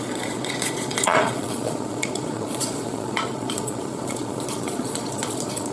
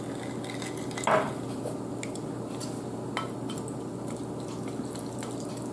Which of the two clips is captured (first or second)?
second